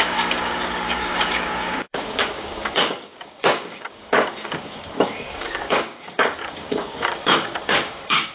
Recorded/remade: remade